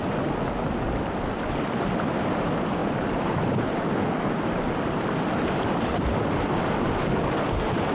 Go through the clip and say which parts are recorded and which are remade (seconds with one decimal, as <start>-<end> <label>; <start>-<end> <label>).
0.0-2.8 recorded; 2.8-3.6 remade; 3.6-7.9 recorded

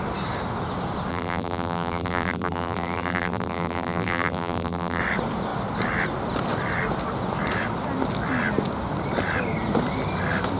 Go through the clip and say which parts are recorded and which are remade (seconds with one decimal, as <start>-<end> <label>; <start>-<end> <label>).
0.0-1.1 recorded; 1.1-5.0 remade; 5.0-10.6 recorded

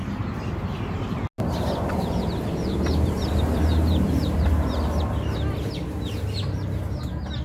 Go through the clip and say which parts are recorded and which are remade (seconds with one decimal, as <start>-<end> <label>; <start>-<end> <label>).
0.0-1.1 remade; 1.1-1.6 recorded; 1.6-4.5 remade; 4.5-7.4 recorded

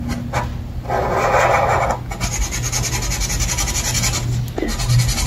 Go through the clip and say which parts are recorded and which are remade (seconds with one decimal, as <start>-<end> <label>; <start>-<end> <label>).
0.0-5.3 recorded